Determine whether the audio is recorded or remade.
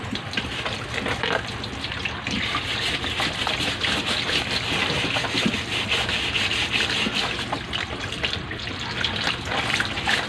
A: recorded